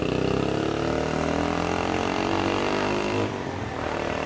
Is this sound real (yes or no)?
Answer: yes